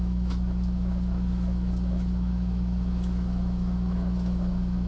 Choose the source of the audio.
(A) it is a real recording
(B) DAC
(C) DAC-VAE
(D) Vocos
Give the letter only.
C